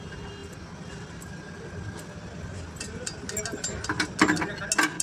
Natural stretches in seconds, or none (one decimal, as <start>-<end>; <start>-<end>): 0.0-5.0